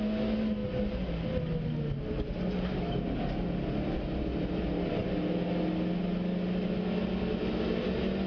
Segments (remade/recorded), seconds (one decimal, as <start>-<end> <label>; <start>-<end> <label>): 0.0-8.3 recorded